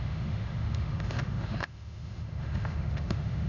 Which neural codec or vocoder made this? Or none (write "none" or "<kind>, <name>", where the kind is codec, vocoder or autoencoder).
autoencoder, DAC-VAE